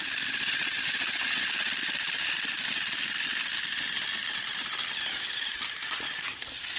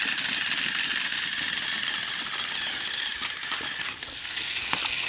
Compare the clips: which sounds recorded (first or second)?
second